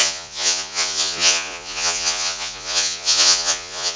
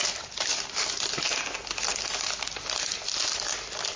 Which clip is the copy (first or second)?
first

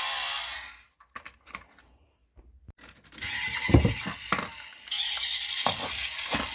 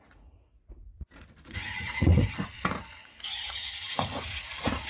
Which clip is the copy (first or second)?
second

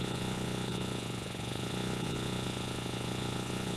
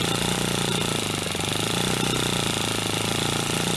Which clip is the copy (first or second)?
first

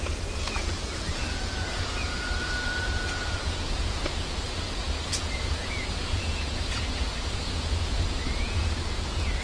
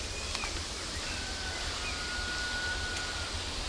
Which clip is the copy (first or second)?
first